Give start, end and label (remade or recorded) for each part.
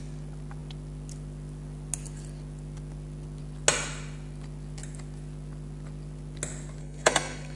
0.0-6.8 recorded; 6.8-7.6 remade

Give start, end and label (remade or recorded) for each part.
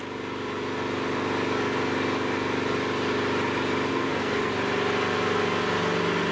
0.0-3.9 recorded; 3.9-4.5 remade; 4.5-6.3 recorded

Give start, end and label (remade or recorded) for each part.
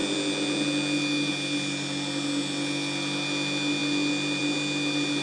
0.0-5.2 recorded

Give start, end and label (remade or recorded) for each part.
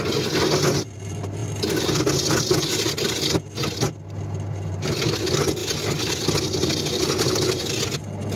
0.0-8.4 recorded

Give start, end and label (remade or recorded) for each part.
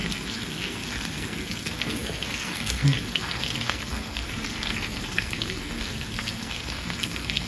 0.0-7.5 remade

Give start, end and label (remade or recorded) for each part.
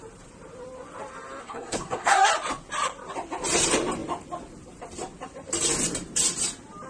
0.0-1.4 recorded; 1.4-2.3 remade; 2.3-6.9 recorded